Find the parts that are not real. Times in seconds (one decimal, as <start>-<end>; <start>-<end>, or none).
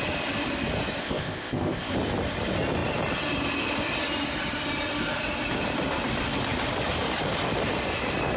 1.0-1.9